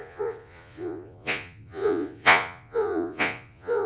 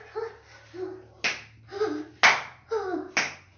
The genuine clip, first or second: second